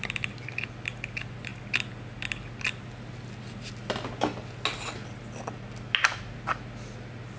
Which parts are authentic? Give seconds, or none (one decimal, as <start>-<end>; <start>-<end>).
0.0-7.4

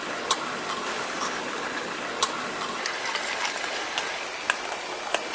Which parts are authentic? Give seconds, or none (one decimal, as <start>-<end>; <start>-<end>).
0.0-5.3

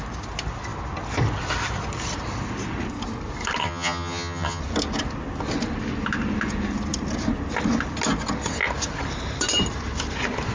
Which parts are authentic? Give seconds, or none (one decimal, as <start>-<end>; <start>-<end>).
0.0-3.6; 4.6-10.5

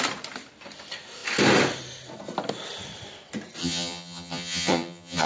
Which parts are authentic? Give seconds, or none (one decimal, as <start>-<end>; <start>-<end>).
0.0-3.6

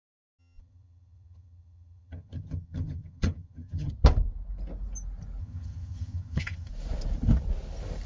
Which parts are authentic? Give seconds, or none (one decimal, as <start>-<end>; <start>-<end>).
0.0-0.4; 3.9-5.4; 6.7-8.1

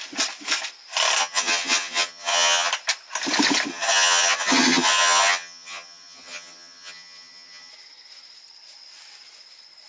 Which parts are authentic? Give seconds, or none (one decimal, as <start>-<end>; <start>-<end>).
0.0-1.2; 2.7-3.7; 7.7-9.9

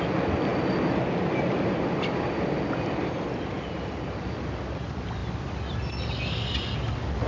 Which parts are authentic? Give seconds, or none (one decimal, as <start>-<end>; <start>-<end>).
0.0-7.3

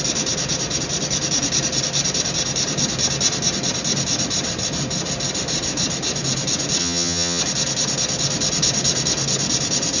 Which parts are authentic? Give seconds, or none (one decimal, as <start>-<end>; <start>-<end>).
0.0-6.8; 7.4-10.0